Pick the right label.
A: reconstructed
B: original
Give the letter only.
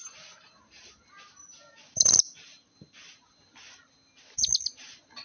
B